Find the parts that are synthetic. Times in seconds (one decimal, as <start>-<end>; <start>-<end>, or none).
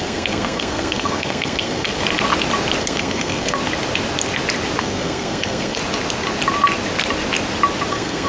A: 0.0-2.0; 2.8-3.6; 4.8-5.8; 7.9-8.3